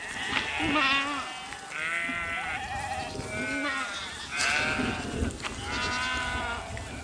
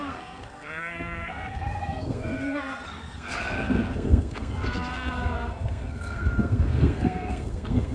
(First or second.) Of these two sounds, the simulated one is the second